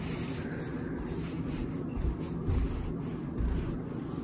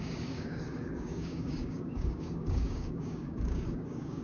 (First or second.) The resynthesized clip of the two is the second